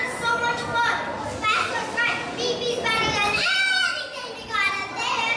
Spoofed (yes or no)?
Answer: no